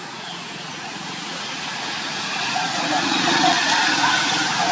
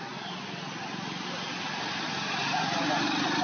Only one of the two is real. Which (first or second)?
second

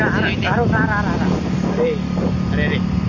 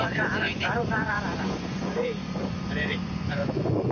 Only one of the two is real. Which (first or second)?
first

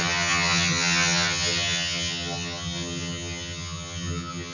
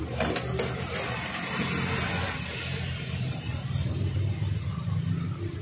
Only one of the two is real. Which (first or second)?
second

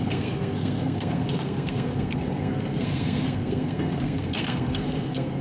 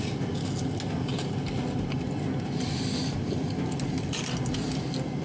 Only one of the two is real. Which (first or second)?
second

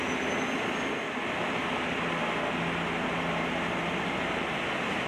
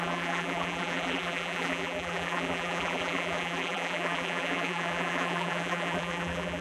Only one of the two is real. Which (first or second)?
first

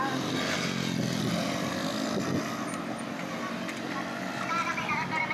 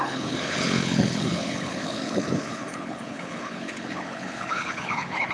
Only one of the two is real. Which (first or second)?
first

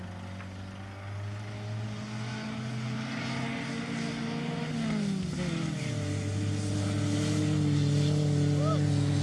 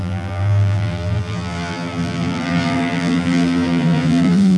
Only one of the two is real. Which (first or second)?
first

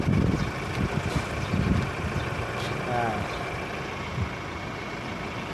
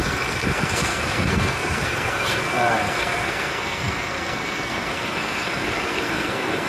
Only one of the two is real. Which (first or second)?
first